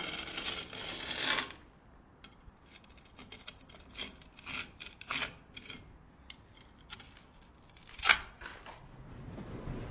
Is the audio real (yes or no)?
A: yes